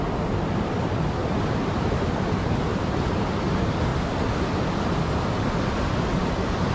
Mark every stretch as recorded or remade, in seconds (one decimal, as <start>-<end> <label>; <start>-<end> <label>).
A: 0.0-1.2 recorded; 1.2-2.0 remade; 2.0-2.7 recorded; 2.7-3.3 remade; 3.3-6.7 recorded